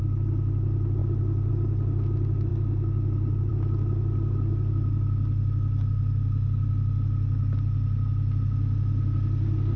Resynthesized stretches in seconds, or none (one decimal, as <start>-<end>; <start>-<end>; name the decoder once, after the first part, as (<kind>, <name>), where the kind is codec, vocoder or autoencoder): none